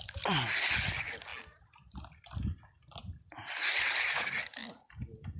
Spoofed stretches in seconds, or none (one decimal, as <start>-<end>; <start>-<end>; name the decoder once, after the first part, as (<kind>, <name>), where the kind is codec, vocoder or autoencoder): none